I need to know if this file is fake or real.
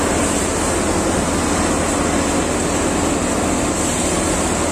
real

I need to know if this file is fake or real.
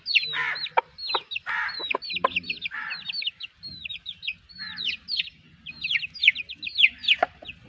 real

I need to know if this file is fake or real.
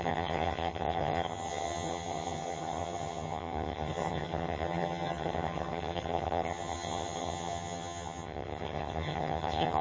fake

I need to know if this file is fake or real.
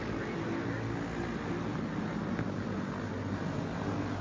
real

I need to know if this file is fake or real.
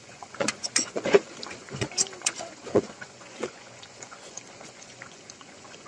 fake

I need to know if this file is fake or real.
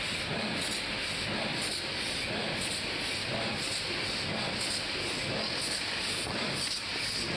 real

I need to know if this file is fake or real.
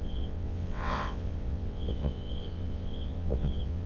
fake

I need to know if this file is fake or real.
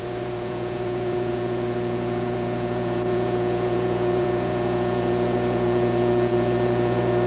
fake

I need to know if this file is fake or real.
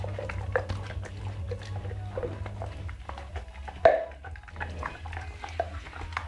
real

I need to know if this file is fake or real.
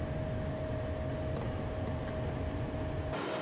real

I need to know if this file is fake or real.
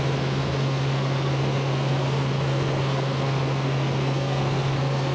fake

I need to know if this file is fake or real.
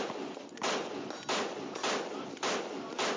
real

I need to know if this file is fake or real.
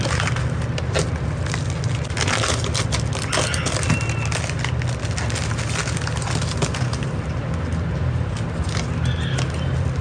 real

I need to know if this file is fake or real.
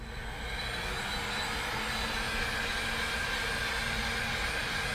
real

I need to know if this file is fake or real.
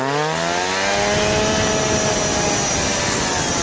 real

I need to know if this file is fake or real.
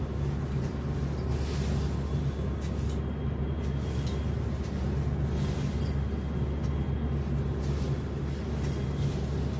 real